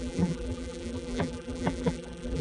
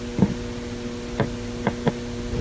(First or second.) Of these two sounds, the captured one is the second